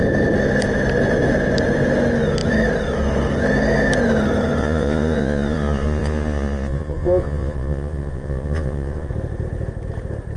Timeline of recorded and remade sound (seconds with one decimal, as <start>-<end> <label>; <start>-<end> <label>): 0.0-4.6 recorded; 4.6-9.1 remade; 9.1-10.4 recorded